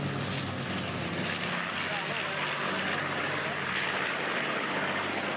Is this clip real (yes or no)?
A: yes